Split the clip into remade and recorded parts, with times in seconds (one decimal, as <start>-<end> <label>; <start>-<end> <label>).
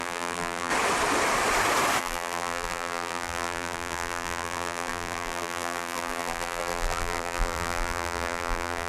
0.0-0.7 remade; 0.7-2.0 recorded; 2.0-8.9 remade